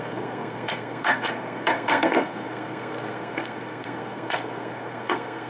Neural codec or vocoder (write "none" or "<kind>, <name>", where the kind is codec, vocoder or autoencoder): codec, SNAC